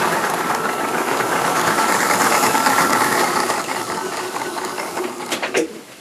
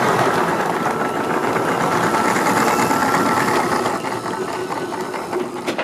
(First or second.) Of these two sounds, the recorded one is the second